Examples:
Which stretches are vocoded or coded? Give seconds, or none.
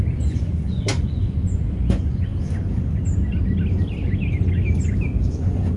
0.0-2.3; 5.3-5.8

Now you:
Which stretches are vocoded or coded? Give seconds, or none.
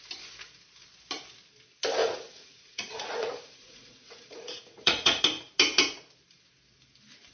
2.0-5.2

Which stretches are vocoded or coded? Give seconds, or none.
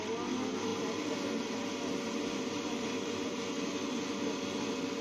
none